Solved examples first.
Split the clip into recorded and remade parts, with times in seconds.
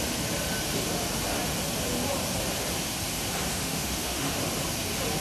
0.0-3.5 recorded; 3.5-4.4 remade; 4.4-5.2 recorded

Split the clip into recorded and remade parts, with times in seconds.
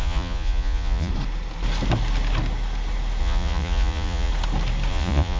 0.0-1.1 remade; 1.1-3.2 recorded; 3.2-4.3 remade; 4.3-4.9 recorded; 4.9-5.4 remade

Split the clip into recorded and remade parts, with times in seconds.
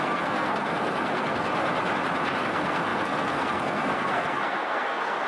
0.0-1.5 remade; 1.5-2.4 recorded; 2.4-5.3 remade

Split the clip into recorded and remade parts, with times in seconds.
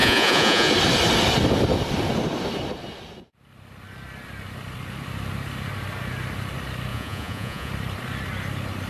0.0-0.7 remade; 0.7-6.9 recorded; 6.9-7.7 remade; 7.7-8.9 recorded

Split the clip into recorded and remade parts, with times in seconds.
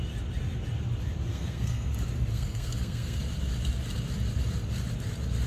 0.0-1.3 recorded; 1.3-1.9 remade; 1.9-2.3 recorded; 2.3-3.2 remade; 3.2-5.5 recorded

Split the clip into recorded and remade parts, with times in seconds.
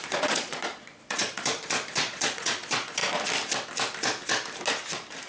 0.0-3.0 remade; 3.0-5.3 recorded